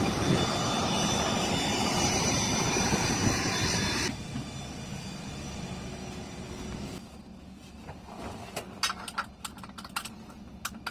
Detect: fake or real real